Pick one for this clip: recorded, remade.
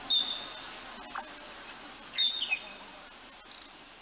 recorded